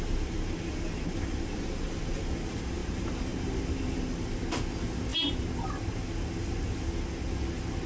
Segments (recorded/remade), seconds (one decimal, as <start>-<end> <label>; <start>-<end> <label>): 0.0-2.8 recorded; 2.8-4.0 remade; 4.0-7.9 recorded